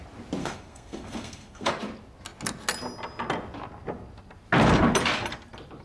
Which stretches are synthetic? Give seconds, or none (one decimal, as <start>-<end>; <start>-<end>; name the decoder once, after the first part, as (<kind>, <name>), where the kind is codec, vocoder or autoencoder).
0.4-1.7 (codec, SNAC)